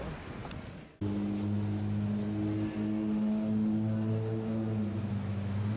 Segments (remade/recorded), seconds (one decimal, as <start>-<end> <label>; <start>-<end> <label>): 0.0-5.8 recorded